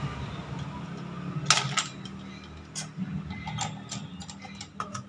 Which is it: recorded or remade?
recorded